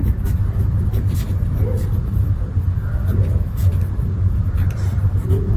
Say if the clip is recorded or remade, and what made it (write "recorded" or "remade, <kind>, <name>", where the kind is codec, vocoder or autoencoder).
recorded